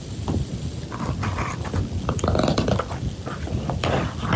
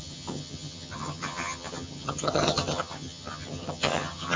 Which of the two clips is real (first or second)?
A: first